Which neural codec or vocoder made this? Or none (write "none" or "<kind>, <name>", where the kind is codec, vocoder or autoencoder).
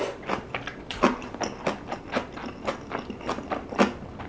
none